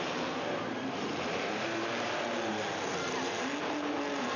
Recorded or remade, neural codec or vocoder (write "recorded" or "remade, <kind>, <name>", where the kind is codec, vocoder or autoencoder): remade, vocoder, BigVGAN v2